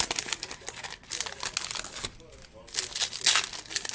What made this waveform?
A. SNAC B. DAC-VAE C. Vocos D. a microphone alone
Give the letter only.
D